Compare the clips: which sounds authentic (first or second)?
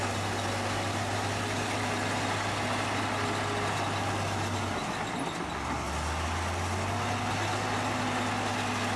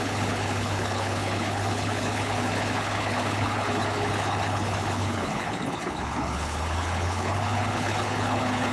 first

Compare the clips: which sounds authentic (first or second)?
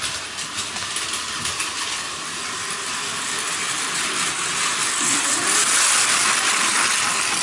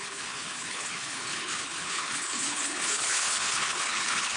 first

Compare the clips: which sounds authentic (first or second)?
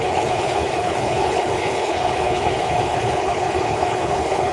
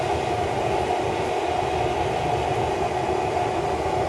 second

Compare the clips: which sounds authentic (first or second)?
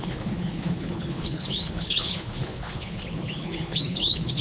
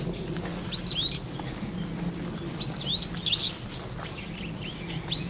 second